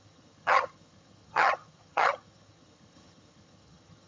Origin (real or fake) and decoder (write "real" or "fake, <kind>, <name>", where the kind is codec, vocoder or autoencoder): fake, vocoder, HiFi-GAN